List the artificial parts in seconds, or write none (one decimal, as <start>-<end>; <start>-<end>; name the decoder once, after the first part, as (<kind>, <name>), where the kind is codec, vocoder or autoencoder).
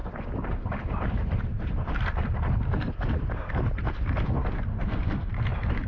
4.7-5.3 (codec, SNAC)